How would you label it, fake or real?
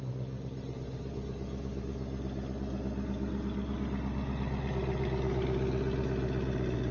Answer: real